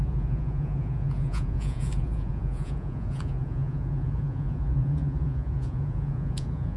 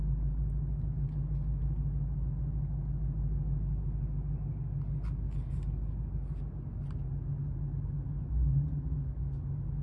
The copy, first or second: first